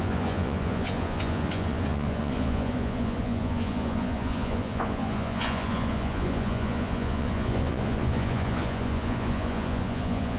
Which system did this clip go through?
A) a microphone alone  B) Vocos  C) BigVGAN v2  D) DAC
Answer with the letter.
B